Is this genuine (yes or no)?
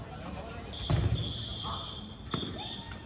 yes